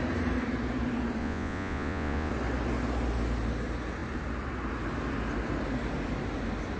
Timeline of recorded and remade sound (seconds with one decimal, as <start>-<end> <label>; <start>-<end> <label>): 0.0-1.2 recorded; 1.2-2.3 remade; 2.3-6.8 recorded

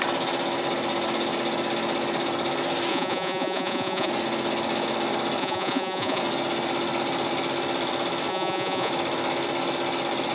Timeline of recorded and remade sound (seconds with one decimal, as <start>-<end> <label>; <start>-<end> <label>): 0.0-2.9 recorded; 2.9-4.1 remade; 4.1-5.4 recorded; 5.4-6.2 remade; 6.2-8.3 recorded; 8.3-8.9 remade; 8.9-10.3 recorded